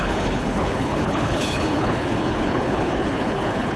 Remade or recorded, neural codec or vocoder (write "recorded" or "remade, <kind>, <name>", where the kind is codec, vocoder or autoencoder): remade, codec, HILCodec